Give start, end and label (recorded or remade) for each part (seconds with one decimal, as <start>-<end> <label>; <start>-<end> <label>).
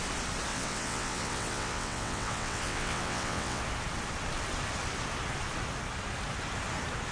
0.0-0.5 recorded; 0.5-3.6 remade; 3.6-7.1 recorded